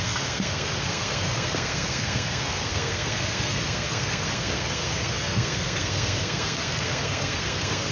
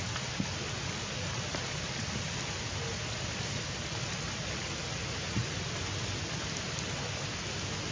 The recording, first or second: second